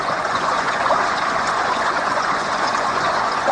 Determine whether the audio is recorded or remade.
remade